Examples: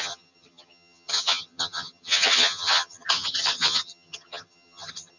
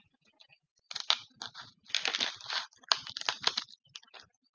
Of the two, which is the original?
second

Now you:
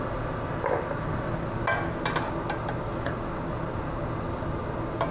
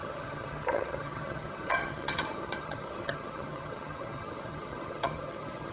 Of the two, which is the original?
first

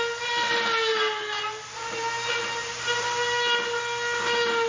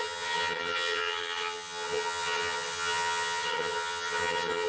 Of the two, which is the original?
first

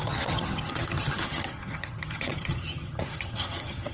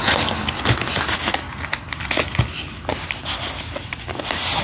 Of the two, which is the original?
second